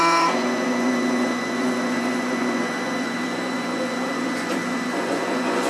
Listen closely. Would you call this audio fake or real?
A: fake